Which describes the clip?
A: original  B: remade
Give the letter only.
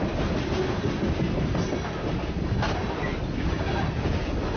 A